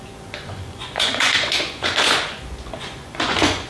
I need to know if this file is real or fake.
fake